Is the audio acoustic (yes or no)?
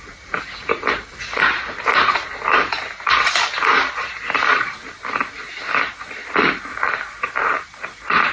no